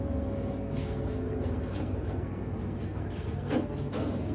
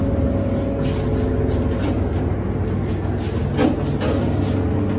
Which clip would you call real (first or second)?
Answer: second